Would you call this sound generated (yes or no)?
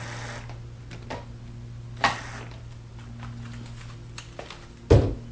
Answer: no